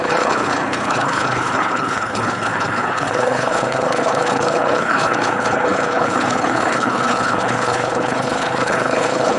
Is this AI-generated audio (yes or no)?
yes